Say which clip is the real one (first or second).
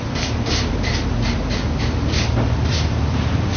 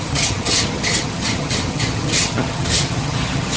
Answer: first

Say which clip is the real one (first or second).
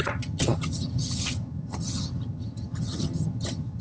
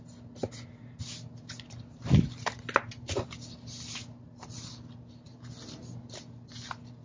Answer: second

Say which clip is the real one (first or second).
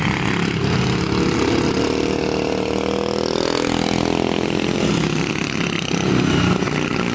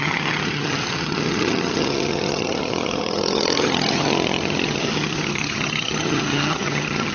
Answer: first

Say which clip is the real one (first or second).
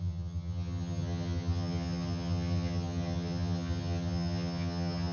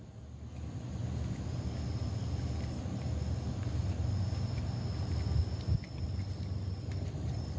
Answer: second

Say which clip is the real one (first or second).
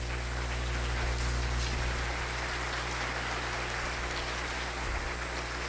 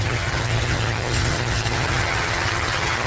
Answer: first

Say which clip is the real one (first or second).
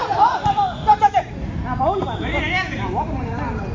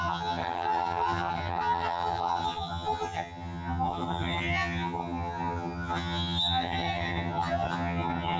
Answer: first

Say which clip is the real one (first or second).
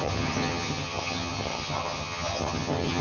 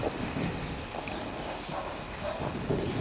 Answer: second